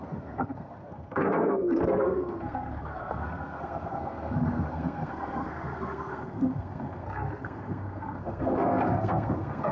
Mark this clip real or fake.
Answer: fake